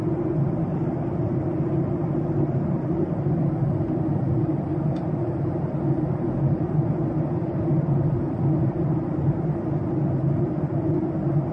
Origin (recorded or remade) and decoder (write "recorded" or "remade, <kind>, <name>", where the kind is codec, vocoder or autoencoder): recorded